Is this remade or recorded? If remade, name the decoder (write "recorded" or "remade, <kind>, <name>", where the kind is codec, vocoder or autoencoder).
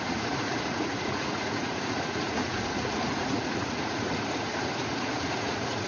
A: remade, vocoder, Vocos